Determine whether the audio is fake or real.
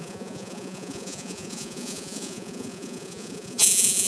fake